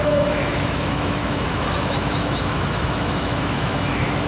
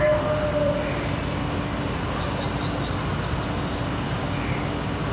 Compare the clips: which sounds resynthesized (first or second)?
first